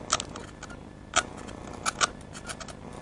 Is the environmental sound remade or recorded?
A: recorded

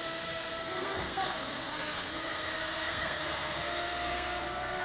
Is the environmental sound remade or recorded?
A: remade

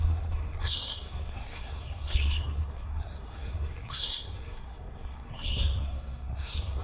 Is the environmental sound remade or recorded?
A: remade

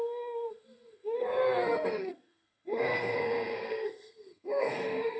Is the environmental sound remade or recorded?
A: remade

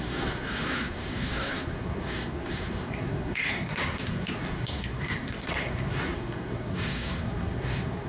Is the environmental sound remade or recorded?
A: remade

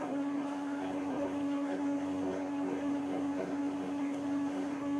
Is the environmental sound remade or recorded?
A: remade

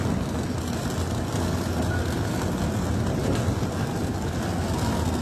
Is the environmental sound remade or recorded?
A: recorded